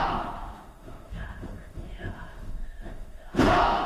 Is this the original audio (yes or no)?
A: no